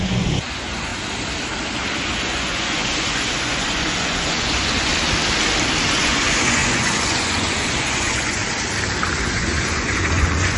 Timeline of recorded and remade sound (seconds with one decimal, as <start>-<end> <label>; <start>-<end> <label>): 0.0-0.9 remade; 0.9-2.2 recorded; 2.2-4.9 remade; 4.9-5.9 recorded; 5.9-8.4 remade; 8.4-9.2 recorded; 9.2-10.6 remade